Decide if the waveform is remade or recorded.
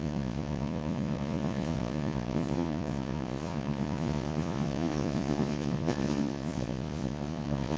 remade